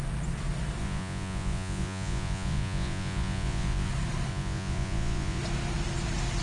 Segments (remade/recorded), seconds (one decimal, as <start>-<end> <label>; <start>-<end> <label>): 0.0-0.8 recorded; 0.8-3.9 remade; 3.9-4.3 recorded; 4.3-5.4 remade; 5.4-6.4 recorded

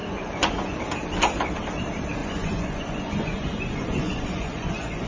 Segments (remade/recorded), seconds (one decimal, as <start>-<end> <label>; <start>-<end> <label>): 0.0-0.8 remade; 0.8-2.2 recorded; 2.2-5.1 remade